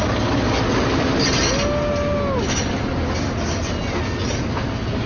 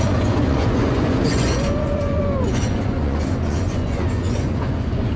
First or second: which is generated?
second